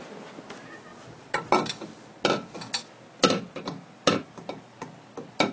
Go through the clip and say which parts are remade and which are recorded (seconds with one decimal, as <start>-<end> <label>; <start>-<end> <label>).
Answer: 0.0-5.5 recorded